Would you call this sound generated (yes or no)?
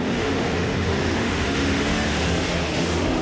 yes